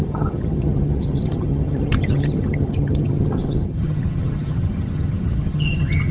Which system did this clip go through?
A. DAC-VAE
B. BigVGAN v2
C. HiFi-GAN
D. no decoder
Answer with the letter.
C